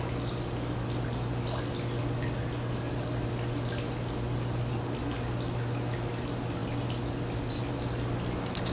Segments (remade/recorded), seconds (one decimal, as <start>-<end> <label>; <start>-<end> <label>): 0.0-8.7 recorded